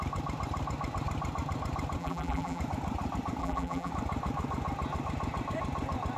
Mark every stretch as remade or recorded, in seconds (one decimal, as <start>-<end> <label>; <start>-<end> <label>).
0.0-2.0 recorded; 2.0-2.6 remade; 2.6-3.4 recorded; 3.4-3.9 remade; 3.9-6.2 recorded